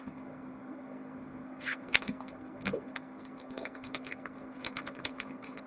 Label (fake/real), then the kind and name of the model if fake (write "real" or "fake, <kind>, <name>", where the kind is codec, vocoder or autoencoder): fake, codec, SNAC